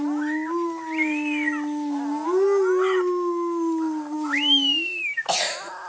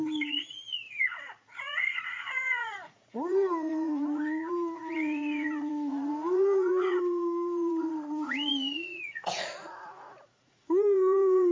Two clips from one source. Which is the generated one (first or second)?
second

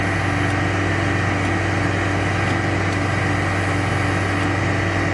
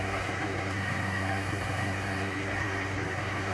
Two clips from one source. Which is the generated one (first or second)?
second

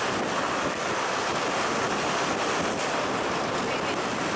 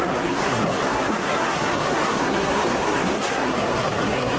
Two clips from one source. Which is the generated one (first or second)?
second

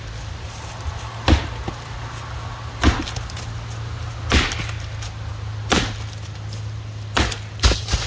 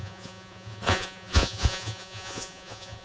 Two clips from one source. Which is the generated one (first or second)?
second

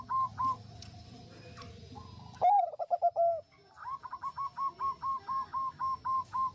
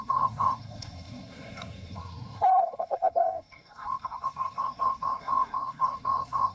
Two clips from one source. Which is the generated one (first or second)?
second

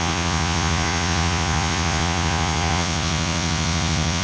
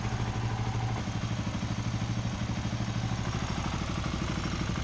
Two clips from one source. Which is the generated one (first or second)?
first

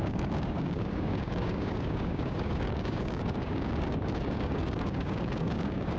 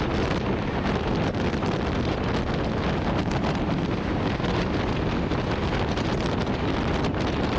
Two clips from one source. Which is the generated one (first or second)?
first